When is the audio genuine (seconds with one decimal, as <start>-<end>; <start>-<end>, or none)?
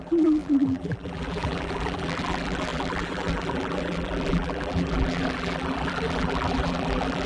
none